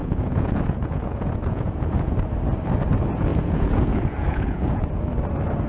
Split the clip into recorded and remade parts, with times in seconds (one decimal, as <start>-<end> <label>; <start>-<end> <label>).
0.0-2.1 remade; 2.1-3.3 recorded; 3.3-5.1 remade; 5.1-5.7 recorded